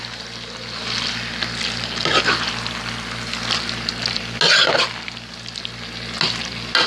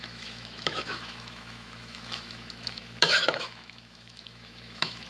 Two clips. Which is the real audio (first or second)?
first